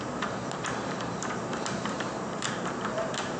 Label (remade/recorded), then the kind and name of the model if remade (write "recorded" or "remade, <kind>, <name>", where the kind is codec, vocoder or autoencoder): remade, vocoder, BigVGAN v2